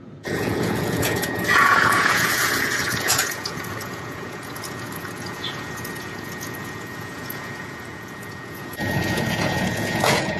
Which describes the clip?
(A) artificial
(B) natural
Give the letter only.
A